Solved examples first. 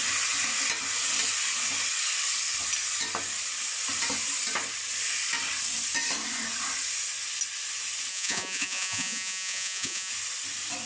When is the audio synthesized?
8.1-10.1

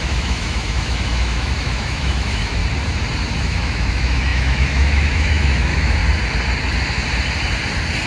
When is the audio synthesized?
0.0-2.6; 3.4-6.0

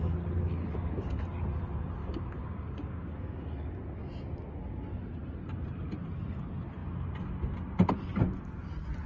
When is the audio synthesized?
0.6-1.2; 2.0-3.5

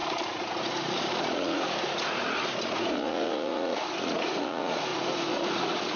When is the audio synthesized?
0.0-6.0

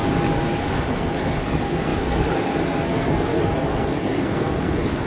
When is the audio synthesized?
0.6-5.1

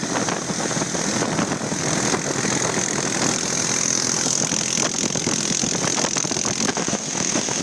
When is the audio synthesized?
6.7-7.6

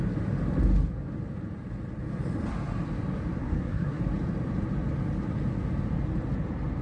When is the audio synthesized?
3.4-4.0